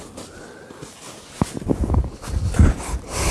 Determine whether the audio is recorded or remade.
recorded